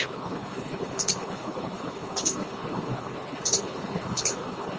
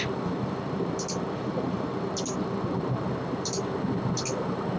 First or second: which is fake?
first